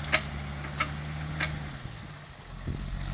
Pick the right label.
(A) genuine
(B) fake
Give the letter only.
A